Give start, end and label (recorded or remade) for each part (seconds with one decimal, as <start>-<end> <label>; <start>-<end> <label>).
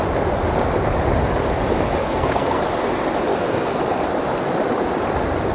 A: 0.0-2.0 recorded; 2.0-2.6 remade; 2.6-3.3 recorded; 3.3-3.8 remade; 3.8-5.5 recorded